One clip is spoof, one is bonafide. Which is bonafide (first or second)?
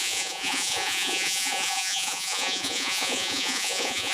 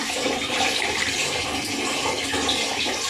second